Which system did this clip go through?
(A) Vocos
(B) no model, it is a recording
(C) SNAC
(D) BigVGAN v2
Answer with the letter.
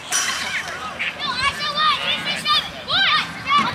B